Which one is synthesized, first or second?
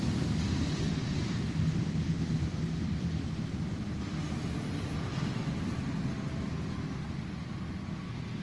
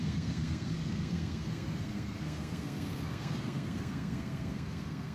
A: second